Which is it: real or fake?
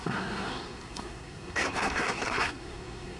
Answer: fake